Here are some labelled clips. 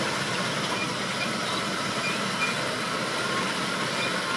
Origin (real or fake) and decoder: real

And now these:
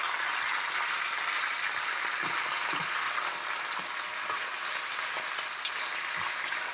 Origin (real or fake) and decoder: real